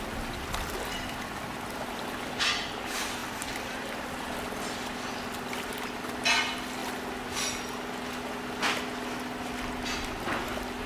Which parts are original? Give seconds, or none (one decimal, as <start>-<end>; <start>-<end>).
0.0-10.9